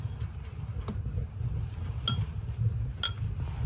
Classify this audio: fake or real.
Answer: real